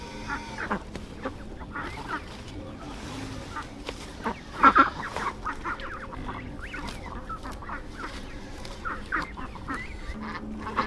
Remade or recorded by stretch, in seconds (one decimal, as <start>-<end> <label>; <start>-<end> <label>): 0.0-7.6 recorded; 7.6-9.9 remade; 9.9-10.9 recorded